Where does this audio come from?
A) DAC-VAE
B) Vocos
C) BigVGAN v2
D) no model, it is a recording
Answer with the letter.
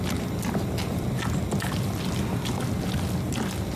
D